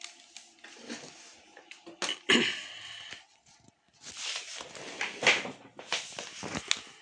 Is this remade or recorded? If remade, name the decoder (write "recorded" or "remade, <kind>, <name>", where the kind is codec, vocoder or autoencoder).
recorded